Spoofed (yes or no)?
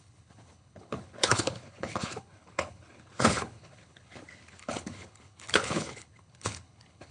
yes